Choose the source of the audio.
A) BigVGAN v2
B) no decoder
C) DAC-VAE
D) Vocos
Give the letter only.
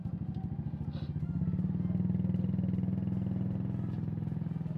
B